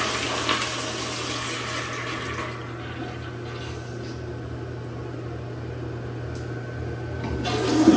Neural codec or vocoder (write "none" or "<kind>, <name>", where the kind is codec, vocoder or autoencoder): none